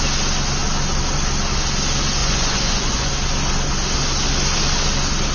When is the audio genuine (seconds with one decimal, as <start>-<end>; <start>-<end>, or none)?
0.0-2.2; 3.1-5.3